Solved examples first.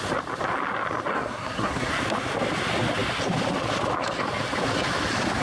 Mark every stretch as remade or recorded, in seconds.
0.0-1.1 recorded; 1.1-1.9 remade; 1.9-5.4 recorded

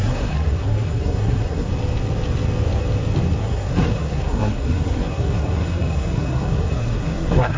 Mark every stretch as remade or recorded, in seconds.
0.0-1.7 remade; 1.7-3.4 recorded; 3.4-7.6 remade

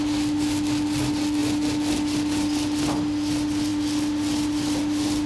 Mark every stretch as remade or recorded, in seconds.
0.0-5.3 recorded

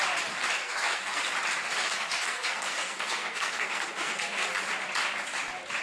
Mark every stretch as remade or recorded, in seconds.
0.0-0.6 recorded; 0.6-1.2 remade; 1.2-1.8 recorded; 1.8-4.5 remade; 4.5-5.8 recorded

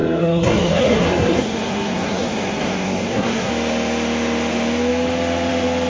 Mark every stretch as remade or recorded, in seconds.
0.0-3.5 remade; 3.5-5.9 recorded

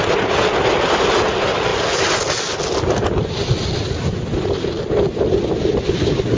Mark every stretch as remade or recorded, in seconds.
0.0-6.4 recorded

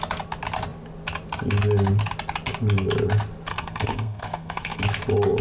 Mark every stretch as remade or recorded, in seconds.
0.0-3.5 recorded; 3.5-4.8 remade; 4.8-5.4 recorded